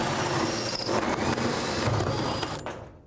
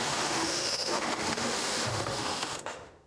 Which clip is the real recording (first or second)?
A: first